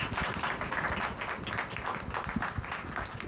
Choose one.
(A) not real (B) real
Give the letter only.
B